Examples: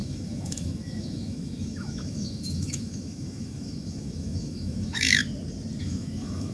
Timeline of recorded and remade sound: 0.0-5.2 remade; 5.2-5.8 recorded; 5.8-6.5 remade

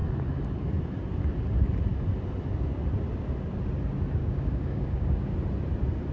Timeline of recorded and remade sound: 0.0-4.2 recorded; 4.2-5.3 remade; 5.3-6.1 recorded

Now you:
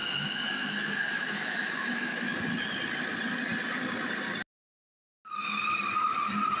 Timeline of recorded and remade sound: 0.0-2.4 remade; 2.4-6.6 recorded

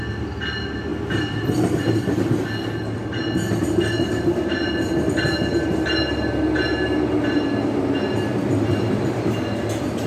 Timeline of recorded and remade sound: 0.0-0.9 recorded; 0.9-2.3 remade; 2.3-8.3 recorded; 8.3-9.0 remade; 9.0-10.1 recorded

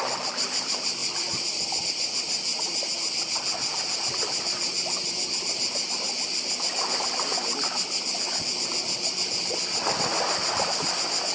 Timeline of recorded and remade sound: 0.0-11.3 recorded